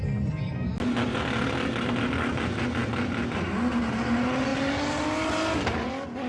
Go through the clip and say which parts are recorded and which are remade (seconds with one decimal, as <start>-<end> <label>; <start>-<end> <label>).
0.0-6.3 recorded